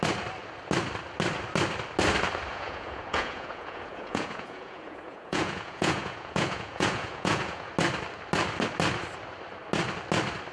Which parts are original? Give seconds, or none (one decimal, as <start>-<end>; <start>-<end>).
0.0-2.5; 7.7-10.5